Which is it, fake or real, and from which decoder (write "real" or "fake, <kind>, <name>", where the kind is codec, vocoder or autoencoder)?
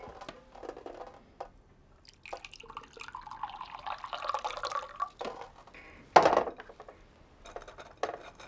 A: real